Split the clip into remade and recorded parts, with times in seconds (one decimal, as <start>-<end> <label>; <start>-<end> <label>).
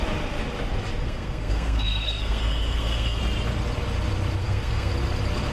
0.0-1.0 recorded; 1.0-3.2 remade; 3.2-4.4 recorded; 4.4-4.9 remade; 4.9-5.5 recorded